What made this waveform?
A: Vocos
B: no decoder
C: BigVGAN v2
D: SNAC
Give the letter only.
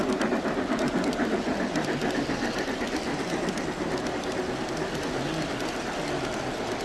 B